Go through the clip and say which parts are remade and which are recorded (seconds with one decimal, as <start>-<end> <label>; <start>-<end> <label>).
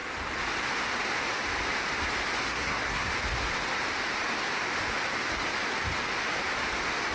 0.0-2.5 recorded; 2.5-3.1 remade; 3.1-7.1 recorded